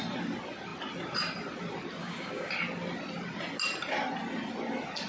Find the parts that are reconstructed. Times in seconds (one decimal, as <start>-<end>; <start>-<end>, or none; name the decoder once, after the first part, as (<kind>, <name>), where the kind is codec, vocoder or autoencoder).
2.0-2.5 (codec, DAC)